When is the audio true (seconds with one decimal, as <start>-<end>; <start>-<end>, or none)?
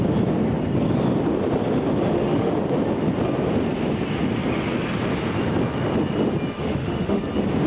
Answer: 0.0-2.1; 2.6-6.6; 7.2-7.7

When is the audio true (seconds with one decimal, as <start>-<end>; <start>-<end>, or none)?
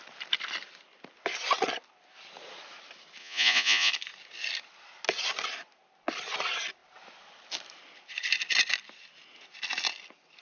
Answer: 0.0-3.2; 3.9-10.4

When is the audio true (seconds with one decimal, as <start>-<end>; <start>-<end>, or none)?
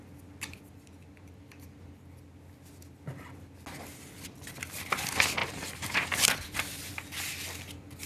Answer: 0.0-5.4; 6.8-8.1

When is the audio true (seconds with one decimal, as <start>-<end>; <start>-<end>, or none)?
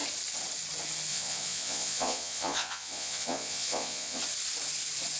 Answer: 0.0-1.1; 4.2-5.2